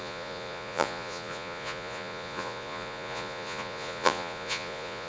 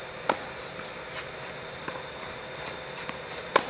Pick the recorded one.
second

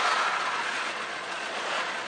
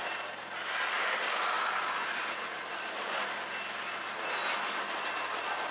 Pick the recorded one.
second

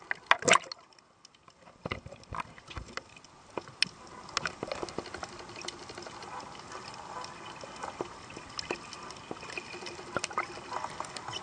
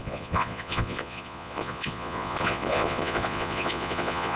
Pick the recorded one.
first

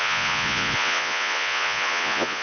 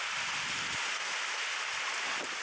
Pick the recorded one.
second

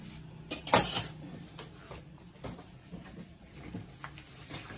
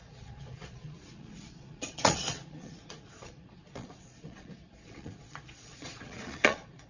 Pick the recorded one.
first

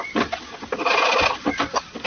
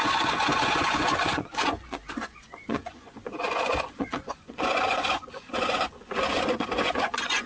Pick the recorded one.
first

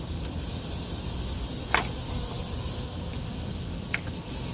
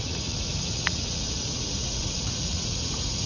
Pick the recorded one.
first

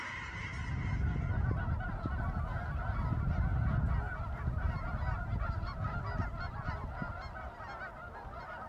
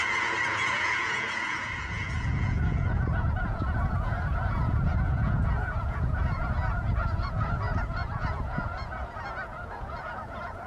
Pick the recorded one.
first